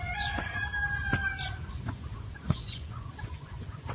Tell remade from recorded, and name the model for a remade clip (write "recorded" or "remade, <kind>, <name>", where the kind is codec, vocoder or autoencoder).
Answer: remade, vocoder, Vocos